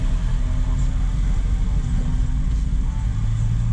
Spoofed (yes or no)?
no